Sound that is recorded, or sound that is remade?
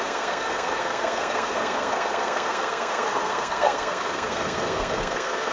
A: remade